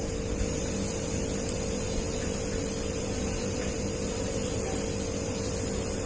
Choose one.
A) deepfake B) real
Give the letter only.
B